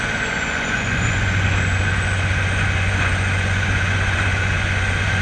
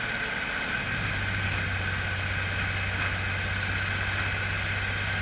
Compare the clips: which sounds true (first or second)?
second